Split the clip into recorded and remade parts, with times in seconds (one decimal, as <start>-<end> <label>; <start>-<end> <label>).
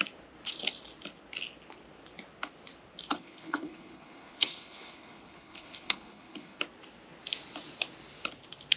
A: 0.0-3.1 recorded; 3.1-6.6 remade; 6.6-8.8 recorded